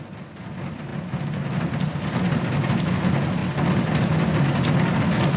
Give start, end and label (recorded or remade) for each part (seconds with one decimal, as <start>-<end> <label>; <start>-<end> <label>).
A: 0.0-5.4 recorded

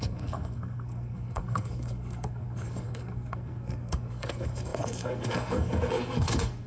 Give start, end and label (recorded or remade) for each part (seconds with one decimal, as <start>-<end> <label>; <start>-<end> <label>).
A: 0.0-6.7 remade

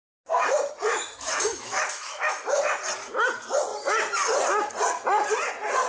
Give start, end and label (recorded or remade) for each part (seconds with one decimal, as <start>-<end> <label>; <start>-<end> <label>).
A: 0.0-0.9 recorded; 0.9-2.6 remade; 2.6-5.9 recorded

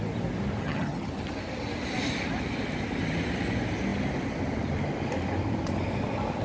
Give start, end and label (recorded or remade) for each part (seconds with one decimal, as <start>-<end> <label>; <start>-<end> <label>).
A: 0.0-0.6 recorded; 0.6-1.1 remade; 1.1-6.4 recorded

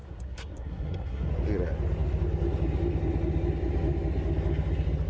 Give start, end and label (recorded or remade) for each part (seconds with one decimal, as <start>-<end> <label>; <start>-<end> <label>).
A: 0.0-1.3 remade; 1.3-5.1 recorded

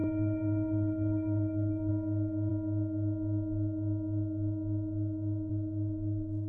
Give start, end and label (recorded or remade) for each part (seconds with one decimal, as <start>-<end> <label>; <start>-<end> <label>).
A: 0.0-1.9 remade; 1.9-6.5 recorded